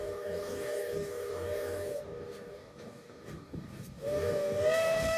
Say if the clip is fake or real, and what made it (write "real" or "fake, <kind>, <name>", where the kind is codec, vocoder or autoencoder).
fake, codec, DAC